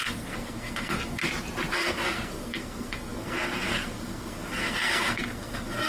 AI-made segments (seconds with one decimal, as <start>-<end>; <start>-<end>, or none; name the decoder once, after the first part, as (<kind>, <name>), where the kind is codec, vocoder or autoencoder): 0.0-1.2 (codec, SNAC); 1.7-5.9